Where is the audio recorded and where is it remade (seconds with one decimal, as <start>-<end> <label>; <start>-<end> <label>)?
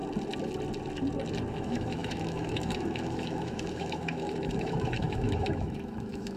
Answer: 0.0-1.5 recorded; 1.5-6.4 remade